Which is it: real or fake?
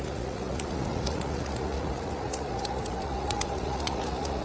fake